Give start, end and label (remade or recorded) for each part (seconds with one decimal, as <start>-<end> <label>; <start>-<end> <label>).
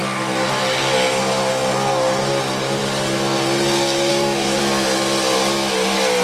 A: 0.0-4.1 recorded; 4.1-4.6 remade; 4.6-6.2 recorded